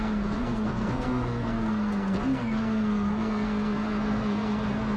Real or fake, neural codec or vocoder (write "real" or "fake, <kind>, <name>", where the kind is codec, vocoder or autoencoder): fake, codec, SNAC